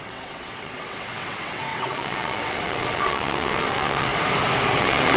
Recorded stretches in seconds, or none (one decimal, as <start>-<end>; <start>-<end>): 4.1-4.7